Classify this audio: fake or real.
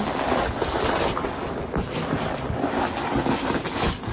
real